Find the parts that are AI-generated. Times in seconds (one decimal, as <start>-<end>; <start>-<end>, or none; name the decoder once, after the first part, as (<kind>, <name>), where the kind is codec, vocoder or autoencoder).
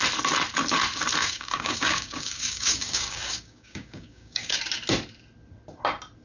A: 1.2-4.6 (codec, DAC)